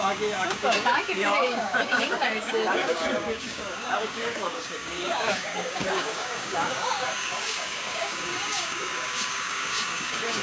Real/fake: fake